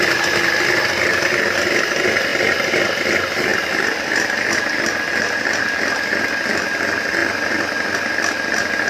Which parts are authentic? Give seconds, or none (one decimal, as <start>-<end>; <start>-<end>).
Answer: 0.0-2.3; 3.1-3.5; 5.6-7.2

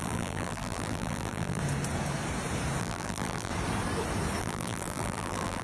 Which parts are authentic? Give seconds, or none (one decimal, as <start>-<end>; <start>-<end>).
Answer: 1.6-2.8; 3.5-4.4

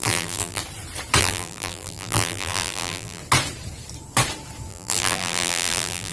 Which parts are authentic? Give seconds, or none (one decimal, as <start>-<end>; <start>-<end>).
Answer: 0.6-1.2; 3.2-4.7

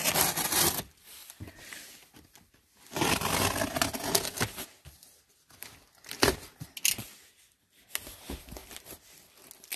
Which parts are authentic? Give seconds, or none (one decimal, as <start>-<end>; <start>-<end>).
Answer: 0.0-1.2; 2.5-8.6; 9.3-9.8

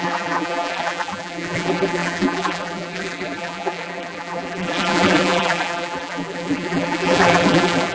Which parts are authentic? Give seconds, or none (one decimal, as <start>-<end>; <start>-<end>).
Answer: none